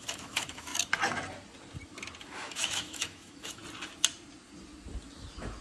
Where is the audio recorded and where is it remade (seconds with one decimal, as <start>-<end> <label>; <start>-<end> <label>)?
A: 0.0-0.7 remade; 0.7-2.2 recorded; 2.2-3.6 remade; 3.6-5.6 recorded